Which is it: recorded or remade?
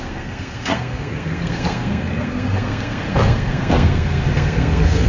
remade